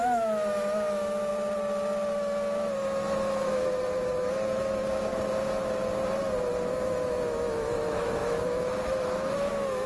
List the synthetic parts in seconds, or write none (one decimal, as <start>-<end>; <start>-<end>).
0.0-1.3; 2.1-5.1; 6.5-9.9